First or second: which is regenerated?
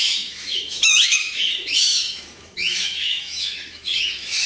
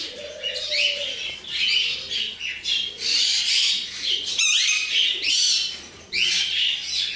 first